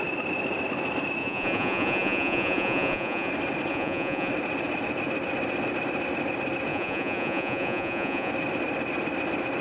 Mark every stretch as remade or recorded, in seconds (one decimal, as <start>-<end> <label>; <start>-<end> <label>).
0.0-1.2 recorded; 1.2-3.3 remade; 3.3-3.7 recorded; 3.7-4.3 remade; 4.3-6.7 recorded; 6.7-8.3 remade; 8.3-9.6 recorded

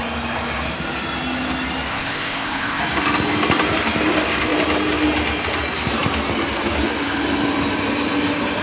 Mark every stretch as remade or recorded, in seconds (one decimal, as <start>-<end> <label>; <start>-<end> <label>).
0.0-1.9 recorded; 1.9-2.8 remade; 2.8-8.6 recorded

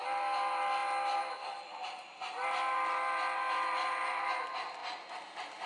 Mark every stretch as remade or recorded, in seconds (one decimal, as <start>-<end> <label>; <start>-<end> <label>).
0.0-5.7 recorded

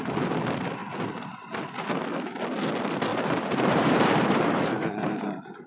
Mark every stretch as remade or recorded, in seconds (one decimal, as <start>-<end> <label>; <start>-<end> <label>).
0.0-3.1 recorded; 3.1-5.7 remade

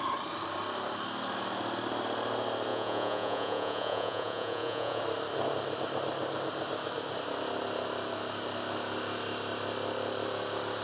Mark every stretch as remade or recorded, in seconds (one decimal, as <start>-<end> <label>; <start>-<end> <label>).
0.0-2.7 recorded; 2.7-5.0 remade; 5.0-10.8 recorded